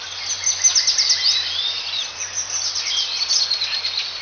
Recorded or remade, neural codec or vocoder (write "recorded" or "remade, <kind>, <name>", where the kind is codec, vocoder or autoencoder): recorded